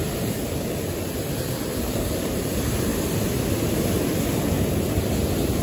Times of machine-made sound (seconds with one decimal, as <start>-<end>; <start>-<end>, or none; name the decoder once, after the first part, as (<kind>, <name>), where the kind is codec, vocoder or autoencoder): 0.0-2.9 (vocoder, BigVGAN v2)